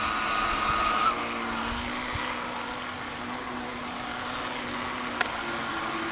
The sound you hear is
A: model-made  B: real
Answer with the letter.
B